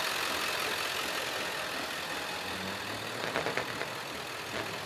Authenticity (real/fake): real